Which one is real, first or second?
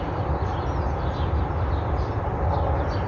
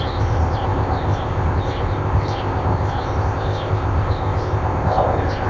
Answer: first